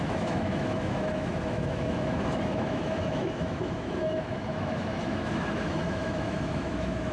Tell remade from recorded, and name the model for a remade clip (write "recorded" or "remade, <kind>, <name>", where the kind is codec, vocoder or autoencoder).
remade, autoencoder, DAC-VAE